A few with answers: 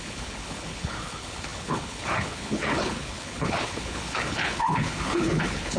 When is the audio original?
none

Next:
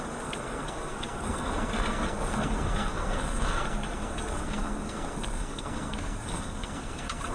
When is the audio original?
none

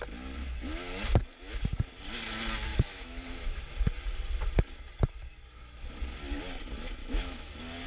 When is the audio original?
0.0-2.7; 3.6-7.0; 7.5-7.9

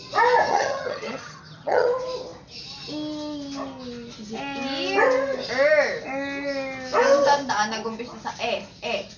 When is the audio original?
0.0-0.5; 1.9-9.2